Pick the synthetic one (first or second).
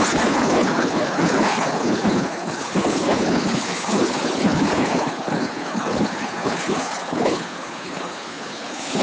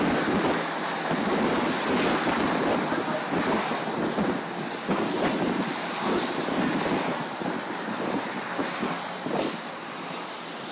first